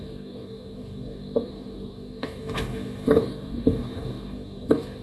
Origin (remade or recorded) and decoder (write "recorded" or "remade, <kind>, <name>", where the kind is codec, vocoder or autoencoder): remade, codec, DAC